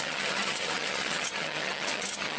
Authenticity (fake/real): fake